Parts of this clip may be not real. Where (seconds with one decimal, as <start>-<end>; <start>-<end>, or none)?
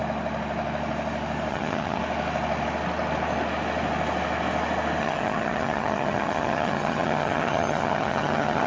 1.5-2.0; 5.0-8.7